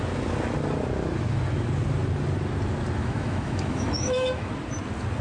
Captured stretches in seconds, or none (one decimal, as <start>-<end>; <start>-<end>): 0.0-3.0; 4.5-5.2